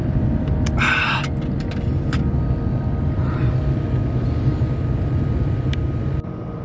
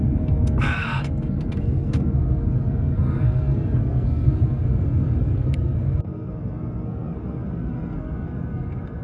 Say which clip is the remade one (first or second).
second